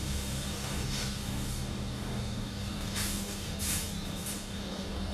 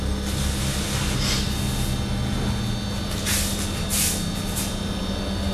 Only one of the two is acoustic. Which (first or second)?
second